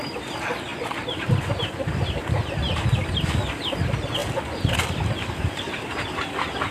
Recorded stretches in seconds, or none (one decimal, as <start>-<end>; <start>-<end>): 0.0-6.7

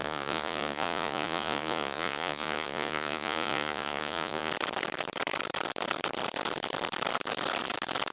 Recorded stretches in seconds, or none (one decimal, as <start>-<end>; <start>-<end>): 4.5-8.1

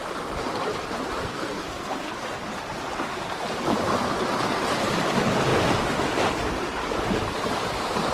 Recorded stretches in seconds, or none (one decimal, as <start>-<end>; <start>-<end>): 0.0-1.2; 2.1-8.1